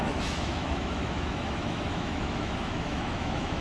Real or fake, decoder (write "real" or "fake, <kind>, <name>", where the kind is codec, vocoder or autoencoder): fake, autoencoder, DAC-VAE